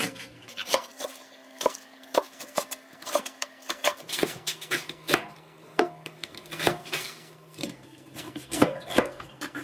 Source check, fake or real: fake